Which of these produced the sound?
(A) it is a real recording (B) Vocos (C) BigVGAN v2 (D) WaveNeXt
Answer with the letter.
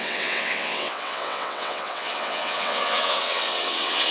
D